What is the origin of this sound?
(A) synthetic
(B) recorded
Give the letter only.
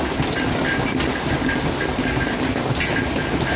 B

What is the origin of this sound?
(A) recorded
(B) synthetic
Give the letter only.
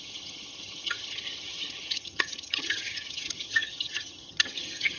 B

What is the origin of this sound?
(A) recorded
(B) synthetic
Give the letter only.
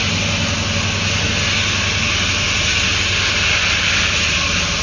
A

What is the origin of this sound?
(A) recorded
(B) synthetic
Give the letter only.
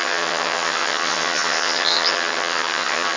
B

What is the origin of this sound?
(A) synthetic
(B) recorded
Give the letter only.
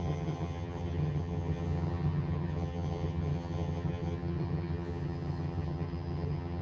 A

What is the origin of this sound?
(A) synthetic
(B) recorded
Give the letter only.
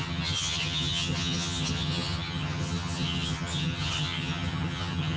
A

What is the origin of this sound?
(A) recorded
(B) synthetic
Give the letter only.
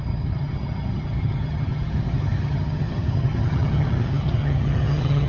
B